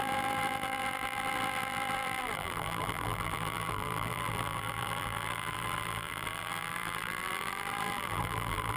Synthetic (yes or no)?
yes